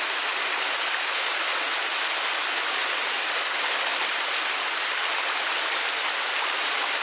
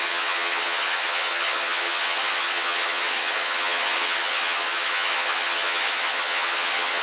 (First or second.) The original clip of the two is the first